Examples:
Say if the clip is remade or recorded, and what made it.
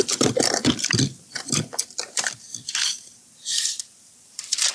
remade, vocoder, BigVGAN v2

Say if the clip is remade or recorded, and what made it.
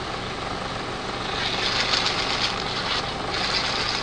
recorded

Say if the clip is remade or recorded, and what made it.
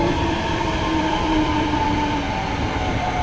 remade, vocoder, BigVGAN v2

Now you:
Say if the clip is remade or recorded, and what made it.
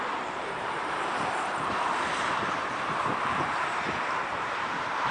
remade, vocoder, BigVGAN v2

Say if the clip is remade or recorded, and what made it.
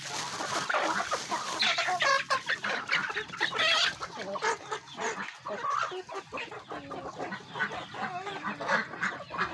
recorded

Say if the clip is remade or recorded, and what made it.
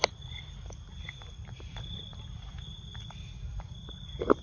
recorded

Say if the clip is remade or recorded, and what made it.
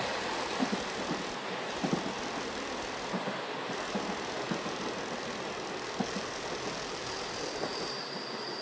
recorded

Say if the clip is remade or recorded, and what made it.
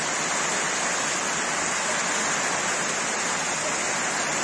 recorded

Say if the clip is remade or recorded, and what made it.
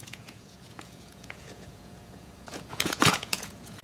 remade, vocoder, Vocos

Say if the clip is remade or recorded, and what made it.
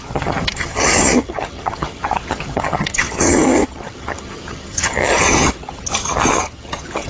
remade, vocoder, HiFi-GAN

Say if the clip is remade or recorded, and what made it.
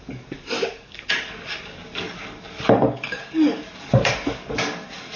remade, codec, DAC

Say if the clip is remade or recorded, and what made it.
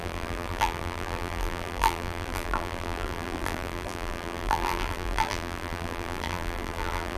remade, vocoder, BigVGAN v2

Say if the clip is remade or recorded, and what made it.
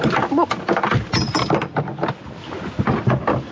recorded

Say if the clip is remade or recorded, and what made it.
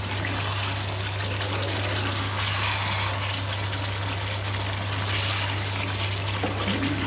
recorded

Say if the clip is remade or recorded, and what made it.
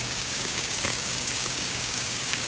remade, codec, DAC